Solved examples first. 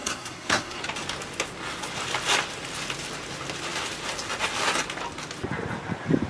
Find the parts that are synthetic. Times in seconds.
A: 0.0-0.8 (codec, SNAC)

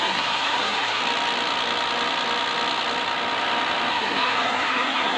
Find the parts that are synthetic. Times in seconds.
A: 0.0-1.0 (codec, SNAC); 3.9-5.2